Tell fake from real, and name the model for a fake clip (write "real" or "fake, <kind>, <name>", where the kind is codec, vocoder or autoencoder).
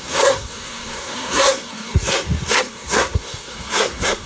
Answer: fake, codec, SNAC